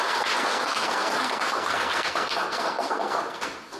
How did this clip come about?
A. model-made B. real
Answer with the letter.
A